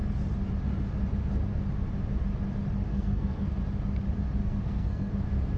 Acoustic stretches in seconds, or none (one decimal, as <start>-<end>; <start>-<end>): 0.0-2.9; 3.6-4.4; 5.1-5.6